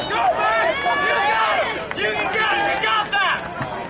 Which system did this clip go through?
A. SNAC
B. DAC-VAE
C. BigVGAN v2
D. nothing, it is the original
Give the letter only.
D